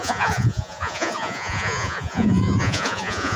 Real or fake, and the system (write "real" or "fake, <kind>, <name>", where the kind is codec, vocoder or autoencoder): fake, vocoder, Vocos